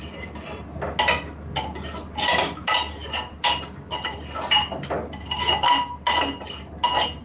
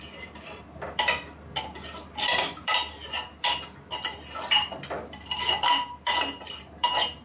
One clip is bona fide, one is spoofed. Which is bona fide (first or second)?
first